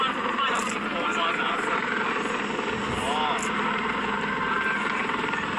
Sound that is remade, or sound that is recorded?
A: remade